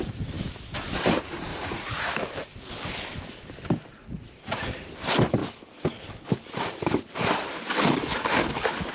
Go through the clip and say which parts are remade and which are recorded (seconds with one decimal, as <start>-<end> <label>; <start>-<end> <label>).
0.0-1.5 recorded; 1.5-2.1 remade; 2.1-4.0 recorded; 4.0-4.8 remade; 4.8-8.9 recorded